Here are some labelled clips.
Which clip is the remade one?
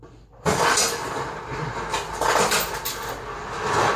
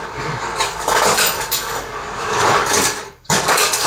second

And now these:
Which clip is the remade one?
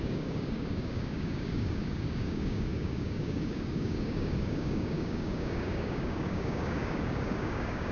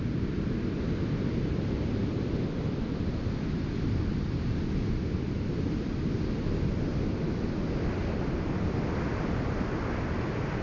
first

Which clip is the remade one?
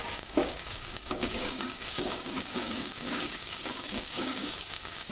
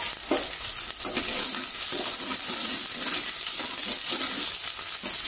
first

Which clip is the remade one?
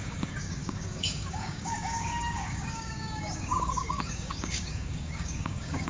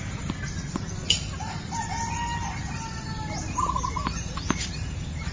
first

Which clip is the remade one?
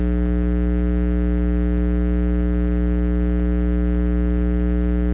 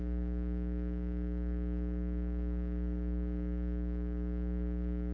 second